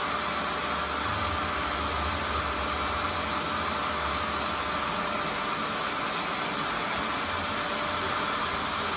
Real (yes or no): yes